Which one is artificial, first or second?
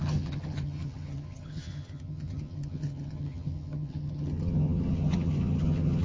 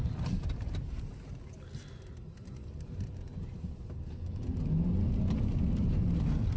first